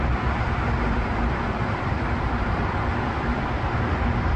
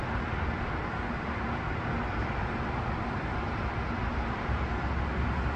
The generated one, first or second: first